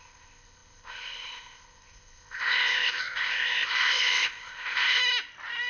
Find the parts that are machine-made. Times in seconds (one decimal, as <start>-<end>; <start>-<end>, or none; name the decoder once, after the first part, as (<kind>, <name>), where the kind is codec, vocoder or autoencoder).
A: 0.0-5.0 (codec, ZipCodec)